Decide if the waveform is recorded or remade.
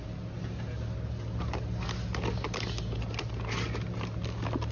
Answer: recorded